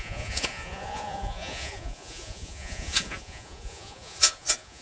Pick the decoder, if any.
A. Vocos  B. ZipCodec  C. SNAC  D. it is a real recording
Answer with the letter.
A